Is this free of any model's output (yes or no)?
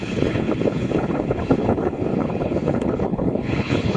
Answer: no